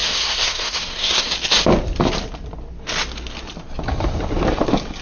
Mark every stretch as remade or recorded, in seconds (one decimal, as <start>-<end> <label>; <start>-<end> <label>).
0.0-1.3 remade; 1.3-5.0 recorded